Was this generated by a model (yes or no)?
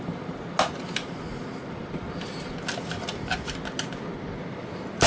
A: no